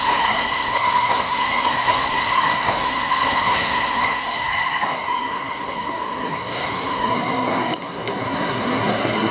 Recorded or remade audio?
remade